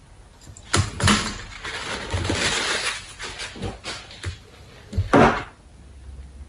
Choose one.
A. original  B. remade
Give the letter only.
A